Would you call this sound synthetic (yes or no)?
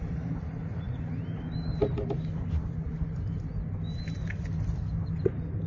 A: no